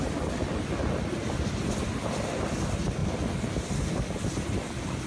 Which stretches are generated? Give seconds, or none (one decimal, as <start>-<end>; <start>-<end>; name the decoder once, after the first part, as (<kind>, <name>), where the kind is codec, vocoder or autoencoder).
none